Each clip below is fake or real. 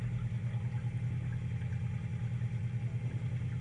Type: real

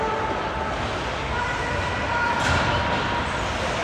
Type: real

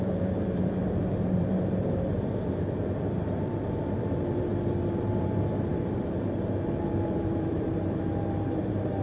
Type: fake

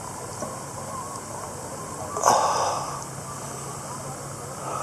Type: real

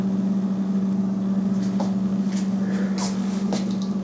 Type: real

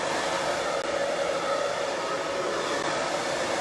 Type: real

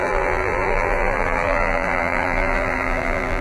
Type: fake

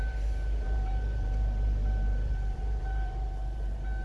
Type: fake